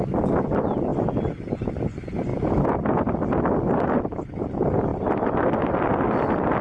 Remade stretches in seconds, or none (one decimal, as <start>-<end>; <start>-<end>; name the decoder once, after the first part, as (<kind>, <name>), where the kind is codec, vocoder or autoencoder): none